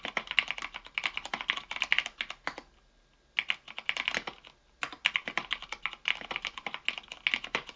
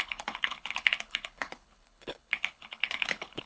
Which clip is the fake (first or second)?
second